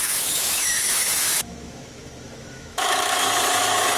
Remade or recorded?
remade